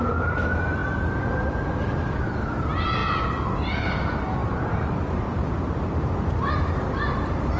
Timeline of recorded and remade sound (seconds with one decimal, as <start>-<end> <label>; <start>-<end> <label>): 0.0-4.4 recorded; 4.4-6.5 remade; 6.5-7.6 recorded